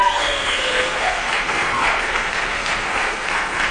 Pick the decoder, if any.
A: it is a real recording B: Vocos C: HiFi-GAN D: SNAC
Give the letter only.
D